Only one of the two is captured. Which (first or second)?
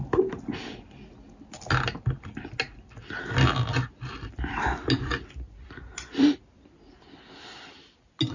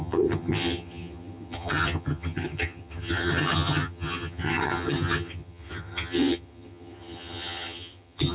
first